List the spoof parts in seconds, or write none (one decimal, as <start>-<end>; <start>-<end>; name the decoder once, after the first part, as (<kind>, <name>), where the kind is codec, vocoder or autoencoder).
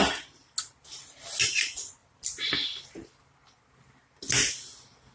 none